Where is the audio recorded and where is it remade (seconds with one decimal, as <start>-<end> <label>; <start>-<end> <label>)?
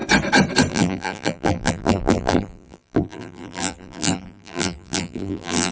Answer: 0.0-0.7 recorded; 0.7-5.7 remade